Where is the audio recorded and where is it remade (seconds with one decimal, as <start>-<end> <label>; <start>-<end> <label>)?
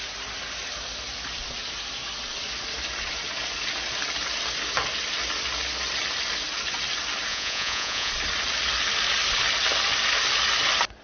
0.0-7.3 recorded; 7.3-8.1 remade; 8.1-11.0 recorded